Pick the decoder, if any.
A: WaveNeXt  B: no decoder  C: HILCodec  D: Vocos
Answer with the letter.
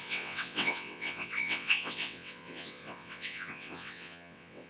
A